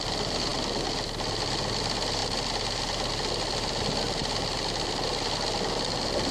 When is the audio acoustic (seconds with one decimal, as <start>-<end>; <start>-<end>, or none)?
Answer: 0.0-6.3